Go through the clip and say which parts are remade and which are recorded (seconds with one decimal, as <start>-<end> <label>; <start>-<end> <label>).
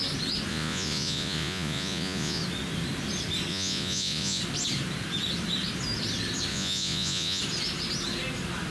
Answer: 0.0-0.5 recorded; 0.5-2.4 remade; 2.4-3.5 recorded; 3.5-4.4 remade; 4.4-6.5 recorded; 6.5-7.4 remade; 7.4-8.7 recorded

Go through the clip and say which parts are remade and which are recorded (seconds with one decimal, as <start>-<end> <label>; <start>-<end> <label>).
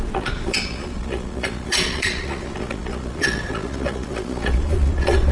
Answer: 0.0-5.3 remade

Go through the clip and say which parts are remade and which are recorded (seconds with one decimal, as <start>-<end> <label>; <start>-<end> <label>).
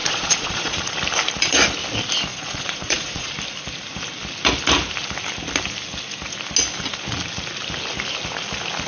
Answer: 0.0-0.9 remade; 0.9-2.3 recorded; 2.3-3.3 remade; 3.3-8.9 recorded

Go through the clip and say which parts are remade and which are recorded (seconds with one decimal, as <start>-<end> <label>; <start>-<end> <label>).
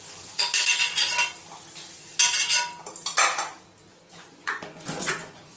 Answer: 0.0-0.5 remade; 0.5-3.9 recorded; 3.9-5.6 remade